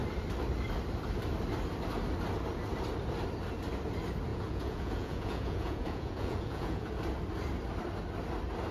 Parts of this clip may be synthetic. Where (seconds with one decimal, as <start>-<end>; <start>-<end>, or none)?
4.3-6.9